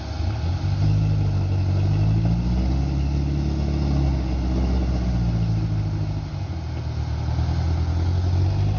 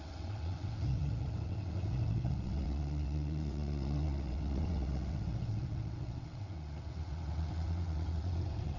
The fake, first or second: second